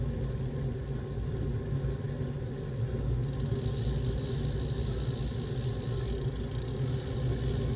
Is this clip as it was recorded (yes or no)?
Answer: yes